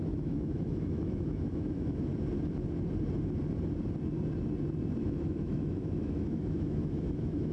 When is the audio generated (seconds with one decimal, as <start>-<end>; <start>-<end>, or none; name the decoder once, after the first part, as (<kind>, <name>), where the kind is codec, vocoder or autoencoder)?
0.0-2.1 (autoencoder, DAC-VAE); 5.0-7.5